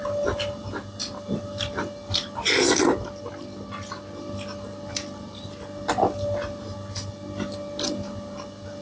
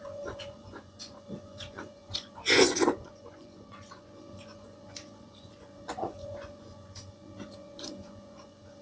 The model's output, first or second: second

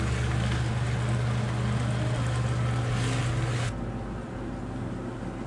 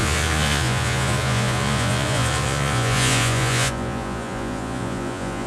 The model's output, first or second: second